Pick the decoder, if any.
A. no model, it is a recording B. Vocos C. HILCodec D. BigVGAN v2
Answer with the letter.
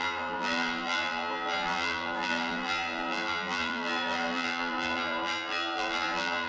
D